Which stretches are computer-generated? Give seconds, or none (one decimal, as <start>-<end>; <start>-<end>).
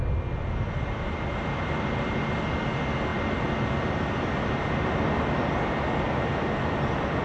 none